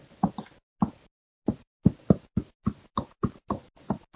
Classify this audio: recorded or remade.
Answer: recorded